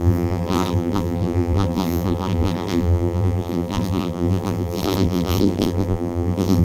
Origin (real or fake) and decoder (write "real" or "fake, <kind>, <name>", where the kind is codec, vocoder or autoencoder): fake, vocoder, BigVGAN v2